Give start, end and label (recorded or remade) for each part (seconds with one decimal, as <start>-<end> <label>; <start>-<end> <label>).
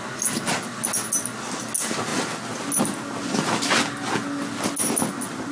0.0-5.5 recorded